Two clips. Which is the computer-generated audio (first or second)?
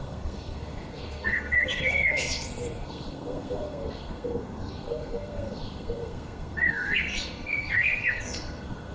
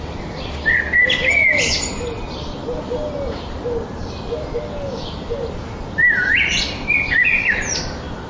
first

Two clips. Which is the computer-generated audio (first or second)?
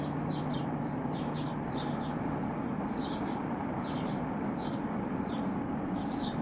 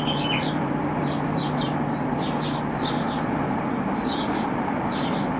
first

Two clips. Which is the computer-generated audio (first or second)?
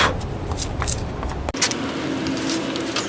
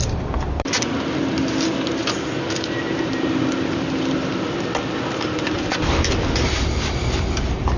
second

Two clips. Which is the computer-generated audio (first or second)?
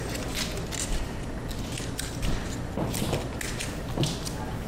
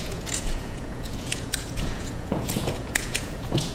second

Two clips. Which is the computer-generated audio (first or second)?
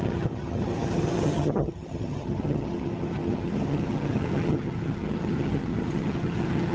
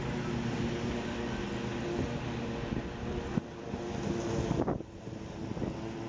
first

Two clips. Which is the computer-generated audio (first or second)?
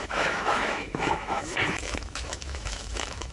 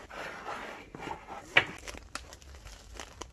first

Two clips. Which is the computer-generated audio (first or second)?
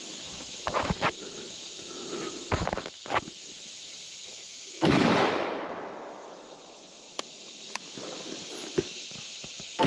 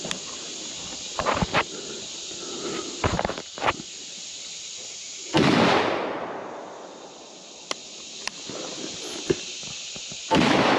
first